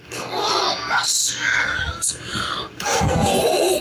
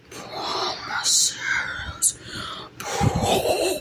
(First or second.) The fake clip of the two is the first